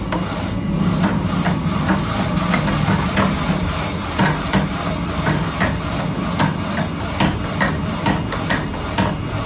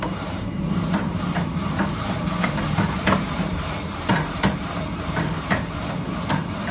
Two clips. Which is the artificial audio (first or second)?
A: second